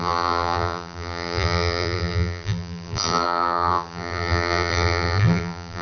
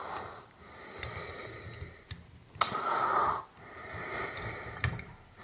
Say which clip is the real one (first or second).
second